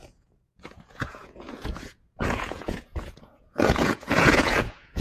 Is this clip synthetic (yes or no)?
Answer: yes